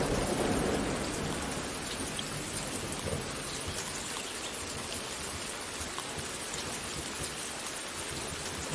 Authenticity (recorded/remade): recorded